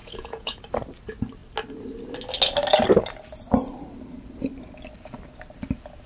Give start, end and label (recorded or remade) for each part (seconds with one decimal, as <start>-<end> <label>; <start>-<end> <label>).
0.0-0.6 remade; 0.6-6.1 recorded